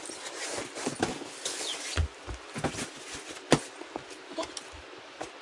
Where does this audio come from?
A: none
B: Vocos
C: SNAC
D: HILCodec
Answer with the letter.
A